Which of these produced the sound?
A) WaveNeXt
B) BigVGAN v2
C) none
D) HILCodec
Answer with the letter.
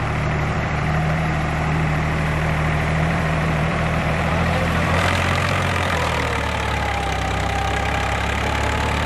B